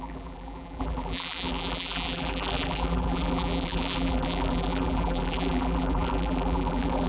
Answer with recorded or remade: remade